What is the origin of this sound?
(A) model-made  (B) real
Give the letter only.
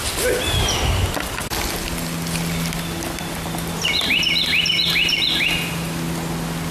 B